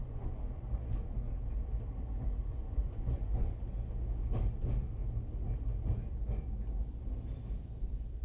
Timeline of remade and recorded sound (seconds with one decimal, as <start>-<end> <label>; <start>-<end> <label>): 0.0-0.6 remade; 0.6-2.5 recorded; 2.5-3.6 remade; 3.6-8.2 recorded